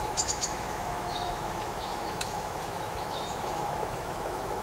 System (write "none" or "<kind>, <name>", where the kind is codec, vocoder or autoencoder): autoencoder, DAC-VAE